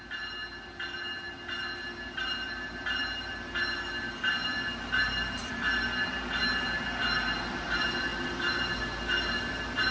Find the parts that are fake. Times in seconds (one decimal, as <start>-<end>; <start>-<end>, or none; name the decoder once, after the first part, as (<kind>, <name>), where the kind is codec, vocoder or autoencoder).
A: none